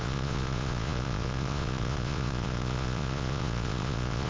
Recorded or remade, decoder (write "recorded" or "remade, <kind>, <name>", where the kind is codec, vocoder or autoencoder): remade, vocoder, Vocos